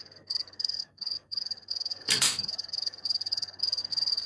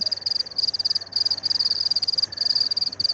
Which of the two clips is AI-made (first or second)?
first